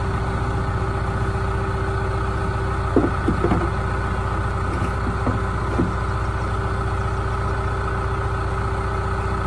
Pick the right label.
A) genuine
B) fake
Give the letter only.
A